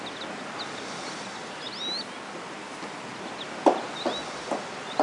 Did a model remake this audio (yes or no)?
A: no